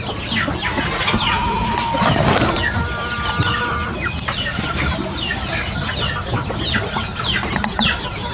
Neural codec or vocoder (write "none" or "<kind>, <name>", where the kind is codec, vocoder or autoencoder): none